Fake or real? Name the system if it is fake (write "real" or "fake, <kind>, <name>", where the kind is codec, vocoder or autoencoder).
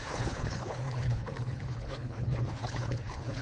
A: fake, codec, HILCodec